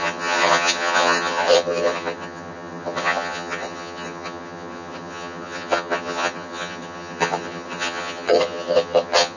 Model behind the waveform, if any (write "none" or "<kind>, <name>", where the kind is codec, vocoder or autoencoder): vocoder, HiFi-GAN